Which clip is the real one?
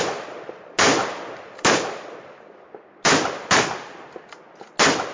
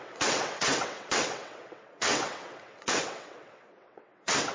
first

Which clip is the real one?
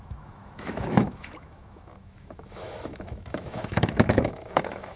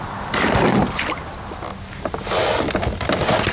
second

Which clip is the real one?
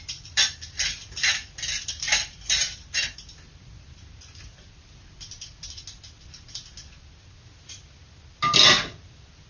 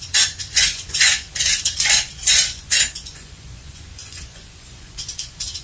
first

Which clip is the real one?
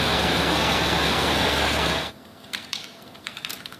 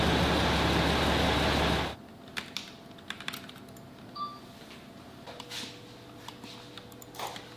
second